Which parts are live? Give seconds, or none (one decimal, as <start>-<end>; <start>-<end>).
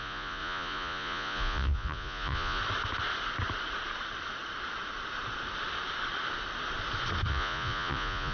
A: 2.6-7.3